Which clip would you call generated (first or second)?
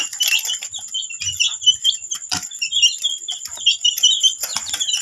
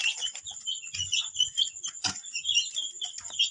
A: second